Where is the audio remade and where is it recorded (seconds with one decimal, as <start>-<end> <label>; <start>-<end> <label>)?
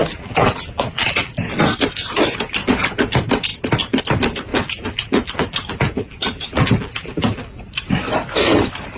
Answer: 0.0-1.3 remade; 1.3-4.5 recorded; 4.5-7.6 remade; 7.6-9.0 recorded